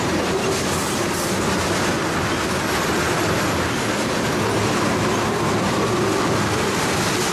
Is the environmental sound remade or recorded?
recorded